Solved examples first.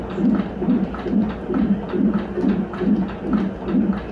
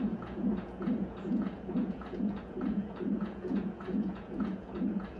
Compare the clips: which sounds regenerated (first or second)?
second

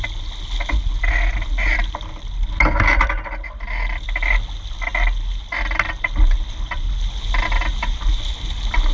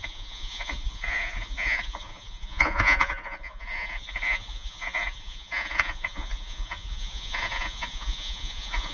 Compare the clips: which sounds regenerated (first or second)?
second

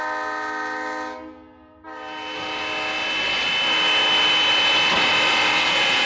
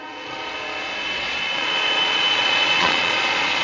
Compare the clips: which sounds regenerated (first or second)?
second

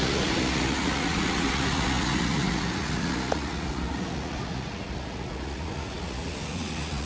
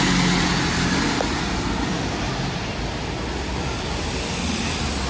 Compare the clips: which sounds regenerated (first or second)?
first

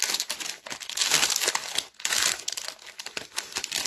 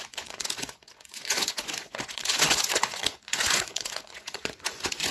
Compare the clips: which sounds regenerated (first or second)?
second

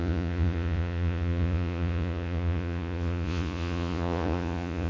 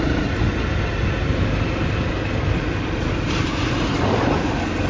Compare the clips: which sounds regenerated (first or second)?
first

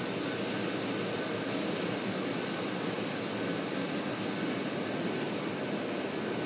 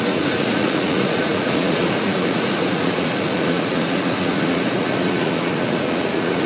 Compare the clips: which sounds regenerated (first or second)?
second